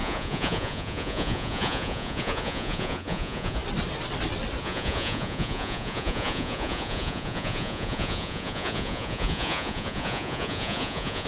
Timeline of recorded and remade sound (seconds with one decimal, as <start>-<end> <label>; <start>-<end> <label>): 0.0-3.6 remade; 3.6-4.6 recorded; 4.6-11.3 remade